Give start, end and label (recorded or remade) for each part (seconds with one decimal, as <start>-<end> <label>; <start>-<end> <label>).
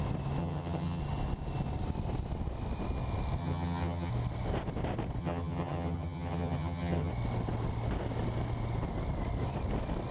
0.0-0.4 recorded; 0.4-1.0 remade; 1.0-3.4 recorded; 3.4-4.1 remade; 4.1-5.2 recorded; 5.2-7.1 remade; 7.1-10.1 recorded